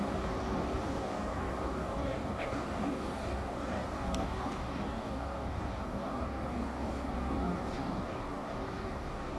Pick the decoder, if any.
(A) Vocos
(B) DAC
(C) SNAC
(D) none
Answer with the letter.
B